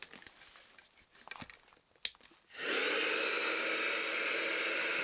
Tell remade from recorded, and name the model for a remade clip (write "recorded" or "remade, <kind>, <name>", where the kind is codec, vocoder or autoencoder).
recorded